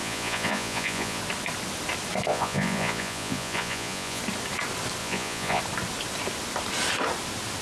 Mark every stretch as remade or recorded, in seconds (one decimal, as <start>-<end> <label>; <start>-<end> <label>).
0.0-1.2 remade; 1.2-2.3 recorded; 2.3-4.2 remade; 4.2-5.0 recorded; 5.0-5.6 remade; 5.6-7.6 recorded